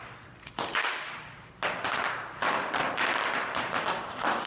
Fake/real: real